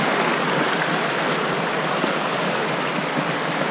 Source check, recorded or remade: recorded